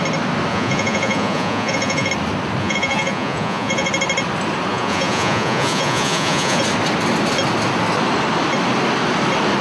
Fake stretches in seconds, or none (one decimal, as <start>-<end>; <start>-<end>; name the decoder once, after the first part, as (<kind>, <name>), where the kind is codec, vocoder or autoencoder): 0.5-2.1 (vocoder, Vocos); 2.6-3.9; 4.7-6.6